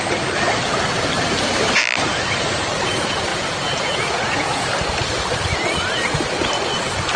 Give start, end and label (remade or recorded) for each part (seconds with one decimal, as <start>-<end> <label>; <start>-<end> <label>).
0.0-3.3 recorded; 3.3-4.7 remade; 4.7-7.2 recorded